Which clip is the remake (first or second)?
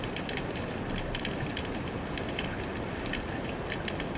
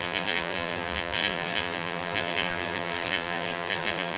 second